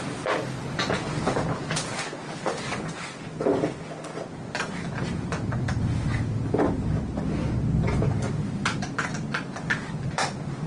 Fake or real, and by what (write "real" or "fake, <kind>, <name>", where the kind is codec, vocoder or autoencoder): real